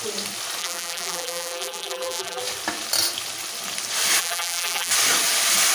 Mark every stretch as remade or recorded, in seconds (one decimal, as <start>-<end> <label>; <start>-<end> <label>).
0.0-0.6 recorded; 0.6-2.4 remade; 2.4-4.2 recorded; 4.2-4.9 remade; 4.9-5.7 recorded